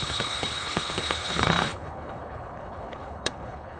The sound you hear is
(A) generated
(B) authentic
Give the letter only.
A